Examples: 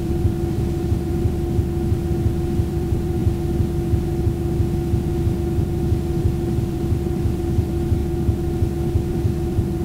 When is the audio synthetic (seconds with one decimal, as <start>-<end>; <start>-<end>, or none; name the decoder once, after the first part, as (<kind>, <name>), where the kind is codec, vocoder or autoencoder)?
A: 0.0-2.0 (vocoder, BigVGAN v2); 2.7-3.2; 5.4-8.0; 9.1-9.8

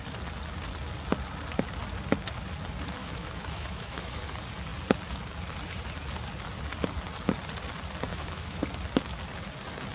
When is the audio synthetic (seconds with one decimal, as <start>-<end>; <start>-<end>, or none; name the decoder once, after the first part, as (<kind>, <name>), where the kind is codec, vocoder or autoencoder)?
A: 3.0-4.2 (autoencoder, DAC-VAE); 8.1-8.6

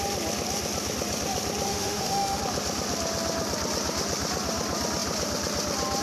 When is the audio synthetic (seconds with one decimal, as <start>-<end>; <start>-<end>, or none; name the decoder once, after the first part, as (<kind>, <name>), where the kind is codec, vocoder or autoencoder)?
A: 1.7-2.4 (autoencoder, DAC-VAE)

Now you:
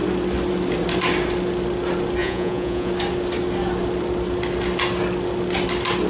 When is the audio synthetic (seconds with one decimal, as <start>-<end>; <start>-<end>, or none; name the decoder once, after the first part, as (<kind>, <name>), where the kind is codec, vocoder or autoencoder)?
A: 2.2-2.9 (vocoder, Vocos)

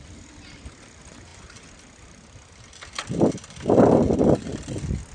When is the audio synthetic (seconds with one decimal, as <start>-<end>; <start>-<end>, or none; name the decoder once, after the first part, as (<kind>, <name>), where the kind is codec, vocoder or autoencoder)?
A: none

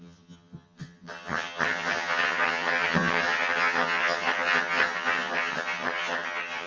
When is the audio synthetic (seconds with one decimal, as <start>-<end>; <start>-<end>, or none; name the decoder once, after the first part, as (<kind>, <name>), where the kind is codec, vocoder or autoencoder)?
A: 0.0-6.7 (vocoder, HiFi-GAN)